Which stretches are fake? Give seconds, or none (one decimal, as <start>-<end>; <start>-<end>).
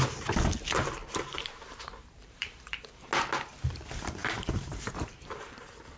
1.0-3.1; 4.2-6.0